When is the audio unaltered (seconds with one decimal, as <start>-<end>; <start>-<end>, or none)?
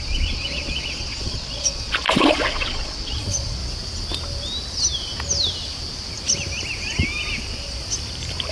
3.6-8.5